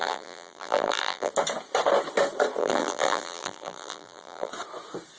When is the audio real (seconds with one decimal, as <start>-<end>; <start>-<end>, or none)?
1.3-2.6; 4.5-5.2